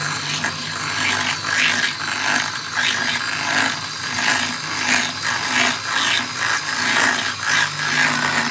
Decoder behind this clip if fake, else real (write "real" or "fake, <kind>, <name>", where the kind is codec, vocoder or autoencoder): real